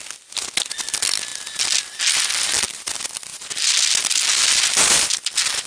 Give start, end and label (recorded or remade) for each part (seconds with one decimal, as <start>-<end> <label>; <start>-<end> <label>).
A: 0.0-5.7 recorded

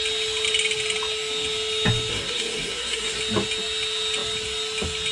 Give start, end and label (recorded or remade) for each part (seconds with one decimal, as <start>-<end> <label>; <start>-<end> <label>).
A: 0.0-2.1 recorded; 2.1-3.2 remade; 3.2-5.1 recorded

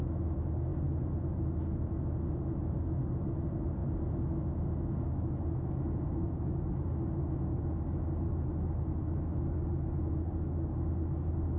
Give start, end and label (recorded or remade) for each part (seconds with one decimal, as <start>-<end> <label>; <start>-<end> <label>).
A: 0.0-11.6 recorded

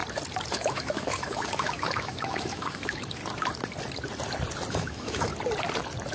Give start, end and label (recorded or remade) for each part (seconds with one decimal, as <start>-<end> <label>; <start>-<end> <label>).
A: 0.0-0.5 recorded; 0.5-3.2 remade; 3.2-4.7 recorded; 4.7-5.3 remade; 5.3-6.1 recorded

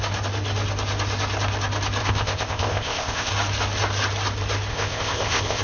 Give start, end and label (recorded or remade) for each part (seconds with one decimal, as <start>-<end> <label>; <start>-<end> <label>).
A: 0.0-2.0 recorded; 2.0-3.3 remade; 3.3-4.7 recorded; 4.7-5.6 remade

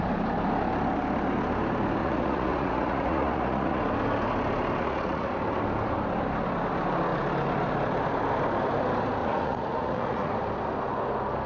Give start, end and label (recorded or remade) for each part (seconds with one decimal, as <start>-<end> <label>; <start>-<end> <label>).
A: 0.0-2.0 recorded; 2.0-3.8 remade; 3.8-4.8 recorded; 4.8-5.3 remade; 5.3-9.2 recorded; 9.2-10.3 remade; 10.3-11.5 recorded

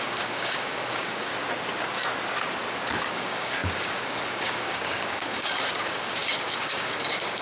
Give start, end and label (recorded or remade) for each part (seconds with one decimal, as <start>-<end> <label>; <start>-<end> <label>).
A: 0.0-1.3 remade; 1.3-3.0 recorded; 3.0-7.4 remade